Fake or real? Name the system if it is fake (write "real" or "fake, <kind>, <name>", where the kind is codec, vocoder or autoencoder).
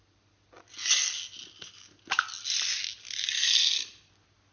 real